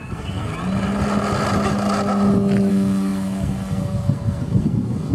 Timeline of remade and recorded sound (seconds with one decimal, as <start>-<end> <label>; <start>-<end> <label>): 0.0-0.5 remade; 0.5-2.7 recorded; 2.7-5.1 remade